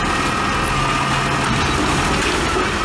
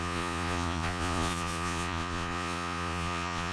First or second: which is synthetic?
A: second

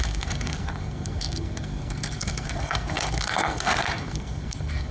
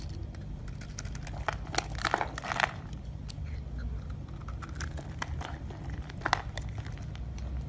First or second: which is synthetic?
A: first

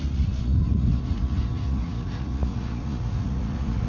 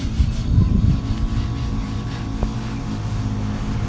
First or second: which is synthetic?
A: first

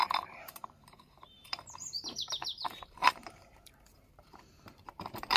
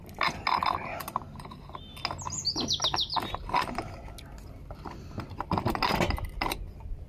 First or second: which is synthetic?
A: first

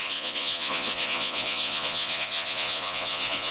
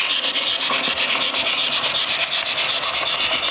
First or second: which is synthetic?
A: first